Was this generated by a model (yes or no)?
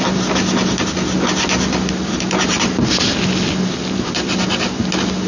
no